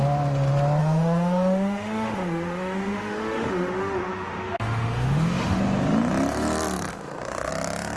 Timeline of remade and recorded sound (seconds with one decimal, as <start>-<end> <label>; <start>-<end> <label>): 0.0-0.8 recorded; 0.8-5.6 remade; 5.6-6.9 recorded; 6.9-7.5 remade; 7.5-8.0 recorded